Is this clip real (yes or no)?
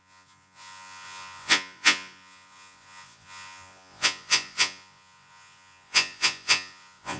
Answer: no